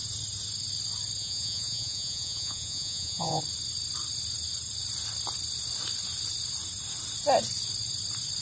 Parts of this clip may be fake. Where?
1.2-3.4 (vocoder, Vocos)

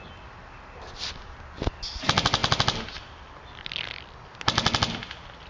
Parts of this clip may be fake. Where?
none

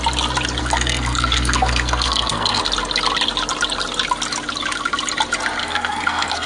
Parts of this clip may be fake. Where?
0.6-2.6 (codec, SNAC); 5.6-6.5